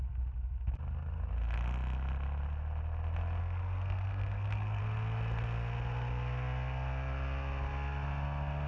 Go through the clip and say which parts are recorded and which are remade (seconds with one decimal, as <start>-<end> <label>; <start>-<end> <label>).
0.0-3.4 recorded; 3.4-4.8 remade; 4.8-8.7 recorded